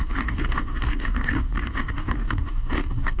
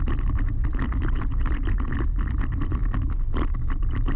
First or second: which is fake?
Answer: first